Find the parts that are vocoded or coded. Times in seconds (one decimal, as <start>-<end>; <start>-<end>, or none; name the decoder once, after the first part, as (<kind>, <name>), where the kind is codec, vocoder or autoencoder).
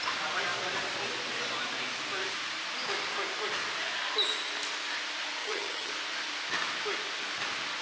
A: 5.4-5.9 (vocoder, HiFi-GAN)